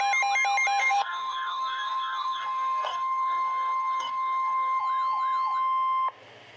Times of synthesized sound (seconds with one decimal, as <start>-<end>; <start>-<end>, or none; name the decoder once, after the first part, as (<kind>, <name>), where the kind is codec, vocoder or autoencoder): 0.8-4.8 (codec, DAC)